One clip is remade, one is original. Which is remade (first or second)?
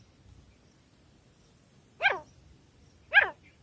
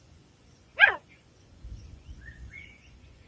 second